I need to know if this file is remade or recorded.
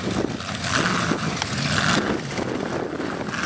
recorded